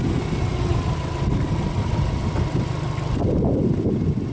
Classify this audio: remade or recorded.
recorded